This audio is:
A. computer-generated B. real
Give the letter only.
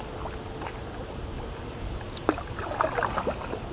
B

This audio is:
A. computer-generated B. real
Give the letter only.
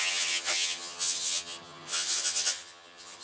A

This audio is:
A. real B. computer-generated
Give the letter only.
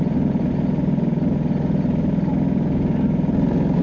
A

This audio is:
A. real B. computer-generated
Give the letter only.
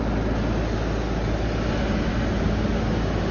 A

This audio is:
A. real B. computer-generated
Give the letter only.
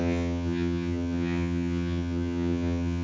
B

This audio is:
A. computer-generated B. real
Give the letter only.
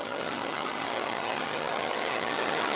A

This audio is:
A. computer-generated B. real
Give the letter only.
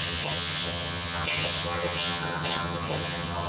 A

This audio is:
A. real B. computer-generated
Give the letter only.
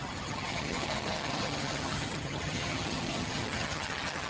B